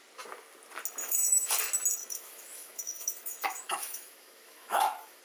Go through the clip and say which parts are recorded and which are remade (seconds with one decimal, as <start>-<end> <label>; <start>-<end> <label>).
0.0-1.0 recorded; 1.0-1.5 remade; 1.5-2.0 recorded; 2.0-5.2 remade